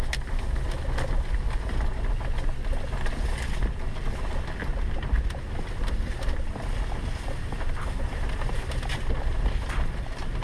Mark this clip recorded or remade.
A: recorded